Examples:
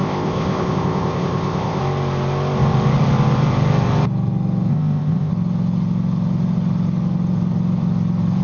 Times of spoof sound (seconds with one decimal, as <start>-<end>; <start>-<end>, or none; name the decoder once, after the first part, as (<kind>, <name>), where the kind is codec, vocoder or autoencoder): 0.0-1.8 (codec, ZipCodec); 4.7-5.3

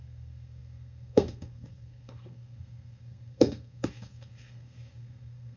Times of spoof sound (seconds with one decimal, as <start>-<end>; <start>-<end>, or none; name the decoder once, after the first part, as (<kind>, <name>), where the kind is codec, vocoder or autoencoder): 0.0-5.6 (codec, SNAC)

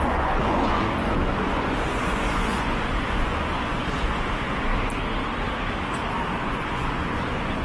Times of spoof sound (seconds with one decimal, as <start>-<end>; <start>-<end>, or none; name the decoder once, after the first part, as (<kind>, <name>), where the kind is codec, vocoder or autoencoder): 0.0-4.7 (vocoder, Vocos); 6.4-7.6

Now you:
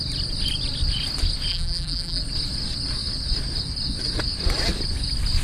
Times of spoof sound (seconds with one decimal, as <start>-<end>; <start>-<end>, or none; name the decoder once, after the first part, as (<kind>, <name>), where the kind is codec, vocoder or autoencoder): 1.5-2.2 (vocoder, BigVGAN v2)

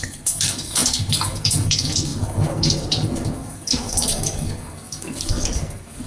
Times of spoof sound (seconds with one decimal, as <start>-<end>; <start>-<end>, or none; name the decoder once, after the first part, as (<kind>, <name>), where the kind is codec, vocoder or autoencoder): 0.0-6.1 (codec, SNAC)

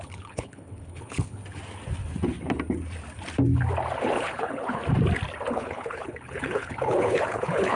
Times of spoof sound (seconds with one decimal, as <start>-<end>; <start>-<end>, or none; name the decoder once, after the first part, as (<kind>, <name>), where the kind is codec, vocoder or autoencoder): 0.0-1.4 (codec, HILCodec); 4.0-4.8; 5.5-7.8